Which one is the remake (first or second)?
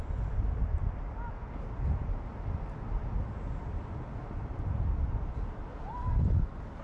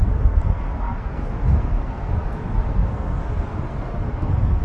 second